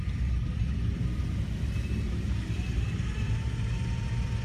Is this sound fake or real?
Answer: real